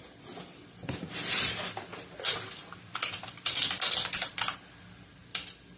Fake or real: real